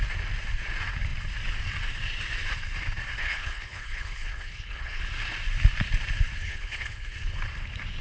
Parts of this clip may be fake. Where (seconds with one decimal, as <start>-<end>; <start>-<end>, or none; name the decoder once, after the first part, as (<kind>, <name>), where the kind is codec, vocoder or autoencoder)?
3.2-5.0 (codec, HILCodec); 6.4-7.4